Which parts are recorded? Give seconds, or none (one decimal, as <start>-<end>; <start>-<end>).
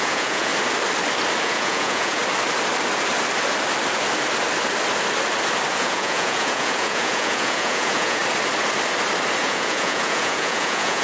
0.5-1.4; 2.2-5.7; 8.2-9.4